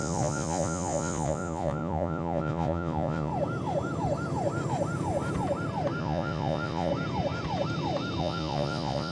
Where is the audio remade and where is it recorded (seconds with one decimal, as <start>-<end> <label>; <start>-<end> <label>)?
0.0-3.3 remade; 3.3-6.0 recorded; 6.0-6.9 remade; 6.9-8.2 recorded; 8.2-9.1 remade